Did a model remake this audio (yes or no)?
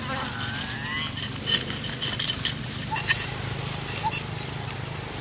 no